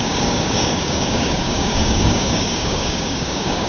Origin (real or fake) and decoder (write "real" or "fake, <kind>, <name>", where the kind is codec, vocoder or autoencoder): fake, codec, DAC